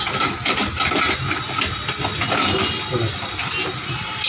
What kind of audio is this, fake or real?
real